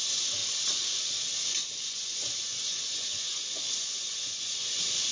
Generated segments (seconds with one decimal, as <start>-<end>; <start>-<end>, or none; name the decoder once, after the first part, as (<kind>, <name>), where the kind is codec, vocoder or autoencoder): 0.0-0.4 (vocoder, Vocos); 1.8-5.1